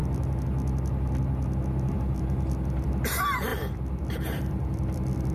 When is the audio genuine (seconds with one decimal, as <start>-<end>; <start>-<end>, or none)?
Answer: 0.0-1.9